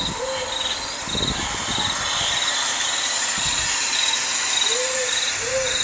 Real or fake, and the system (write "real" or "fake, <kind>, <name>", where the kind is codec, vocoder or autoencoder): real